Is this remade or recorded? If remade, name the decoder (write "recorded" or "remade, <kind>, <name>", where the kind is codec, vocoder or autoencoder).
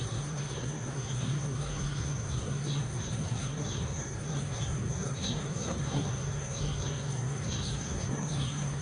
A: remade, codec, SNAC